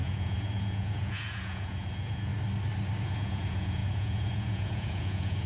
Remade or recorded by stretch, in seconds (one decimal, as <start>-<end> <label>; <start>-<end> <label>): 0.0-2.3 remade; 2.3-3.0 recorded; 3.0-5.5 remade